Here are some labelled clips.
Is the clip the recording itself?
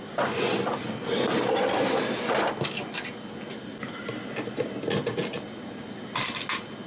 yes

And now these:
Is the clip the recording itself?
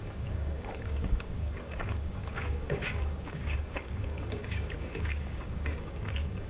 no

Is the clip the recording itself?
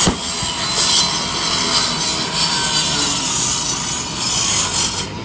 yes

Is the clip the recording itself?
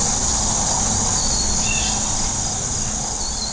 yes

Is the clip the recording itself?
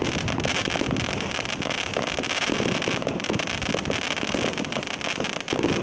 yes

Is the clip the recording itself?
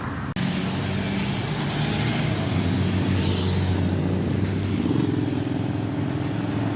yes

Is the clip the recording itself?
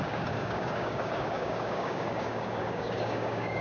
no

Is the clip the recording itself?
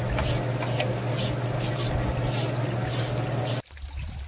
yes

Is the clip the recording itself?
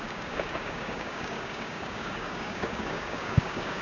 no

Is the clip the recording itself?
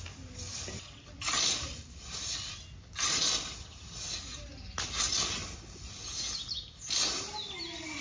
yes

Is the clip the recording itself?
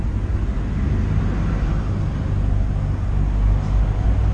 yes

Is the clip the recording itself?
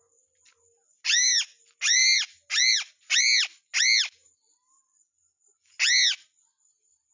yes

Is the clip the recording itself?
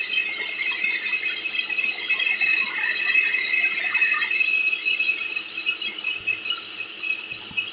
yes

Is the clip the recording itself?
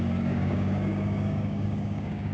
no